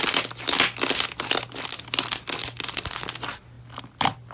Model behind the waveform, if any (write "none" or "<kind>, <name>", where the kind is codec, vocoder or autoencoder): none